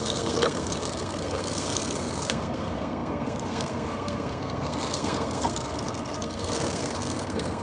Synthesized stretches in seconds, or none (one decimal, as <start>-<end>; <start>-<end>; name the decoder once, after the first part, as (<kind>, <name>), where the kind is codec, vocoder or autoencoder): 0.0-7.6 (codec, SNAC)